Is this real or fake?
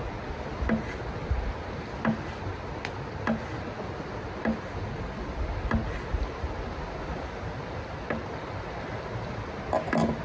real